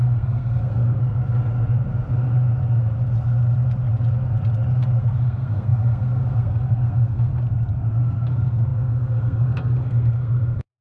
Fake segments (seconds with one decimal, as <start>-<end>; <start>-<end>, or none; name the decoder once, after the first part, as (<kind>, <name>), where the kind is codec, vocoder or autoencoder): 0.0-1.2 (codec, SNAC); 5.0-7.3; 7.9-10.8

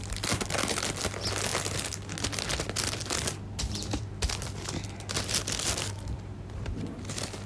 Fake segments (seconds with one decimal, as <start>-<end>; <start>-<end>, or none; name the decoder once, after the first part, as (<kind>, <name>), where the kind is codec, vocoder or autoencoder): none